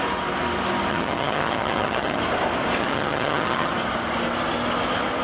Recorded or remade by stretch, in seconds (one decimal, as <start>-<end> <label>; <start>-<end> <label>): 0.0-0.9 recorded; 0.9-2.2 remade; 2.2-2.8 recorded; 2.8-3.7 remade; 3.7-5.2 recorded